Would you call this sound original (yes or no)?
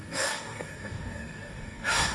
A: no